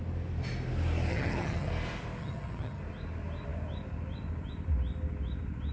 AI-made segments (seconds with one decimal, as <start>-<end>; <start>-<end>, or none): 1.1-1.7; 2.2-2.8